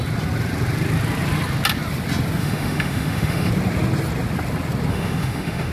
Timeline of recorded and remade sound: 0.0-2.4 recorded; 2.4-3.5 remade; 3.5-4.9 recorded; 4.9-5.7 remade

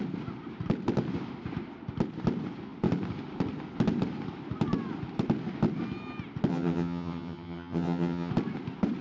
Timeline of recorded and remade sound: 0.0-6.5 recorded; 6.5-8.3 remade; 8.3-9.0 recorded

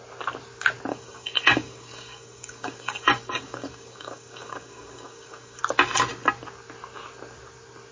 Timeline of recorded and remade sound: 0.0-0.9 recorded; 0.9-5.6 remade; 5.6-7.9 recorded

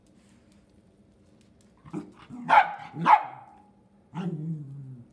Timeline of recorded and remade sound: 0.0-5.1 recorded

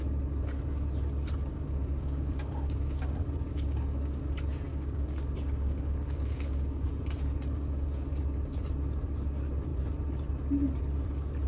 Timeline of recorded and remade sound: 0.0-1.5 recorded; 1.5-3.0 remade; 3.0-3.5 recorded; 3.5-4.2 remade; 4.2-4.7 recorded; 4.7-6.9 remade; 6.9-11.5 recorded

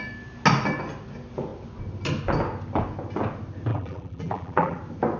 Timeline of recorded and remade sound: 0.0-3.7 recorded; 3.7-4.8 remade; 4.8-5.2 recorded

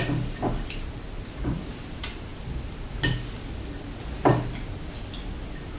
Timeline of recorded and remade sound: 0.0-5.8 recorded

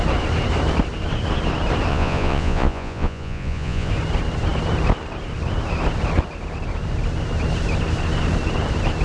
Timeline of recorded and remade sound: 0.0-1.9 recorded; 1.9-3.9 remade; 3.9-9.0 recorded